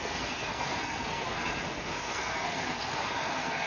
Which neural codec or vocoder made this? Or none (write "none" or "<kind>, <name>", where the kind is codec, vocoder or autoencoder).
codec, SNAC